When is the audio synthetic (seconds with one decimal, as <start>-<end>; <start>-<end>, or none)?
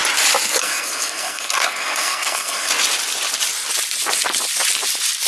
0.6-2.7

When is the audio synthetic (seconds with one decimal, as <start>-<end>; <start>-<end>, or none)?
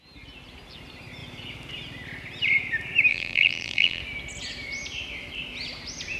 3.1-4.0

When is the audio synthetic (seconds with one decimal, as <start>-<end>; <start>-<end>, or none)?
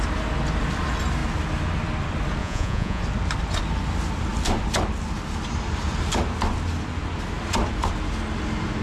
2.4-3.0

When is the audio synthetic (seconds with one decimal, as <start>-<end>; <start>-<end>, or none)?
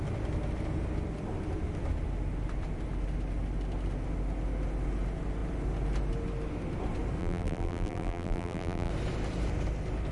7.2-8.9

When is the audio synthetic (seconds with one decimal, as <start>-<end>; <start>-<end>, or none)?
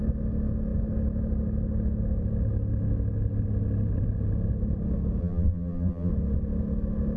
5.2-6.1